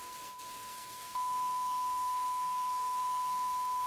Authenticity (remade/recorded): remade